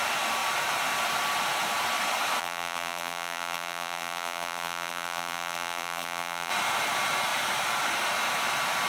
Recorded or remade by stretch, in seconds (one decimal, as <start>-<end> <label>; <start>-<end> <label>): 0.0-2.4 recorded; 2.4-6.5 remade; 6.5-8.9 recorded